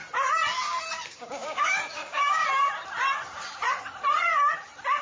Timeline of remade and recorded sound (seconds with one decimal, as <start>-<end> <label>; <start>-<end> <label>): 0.0-1.1 recorded; 1.1-2.4 remade; 2.4-5.0 recorded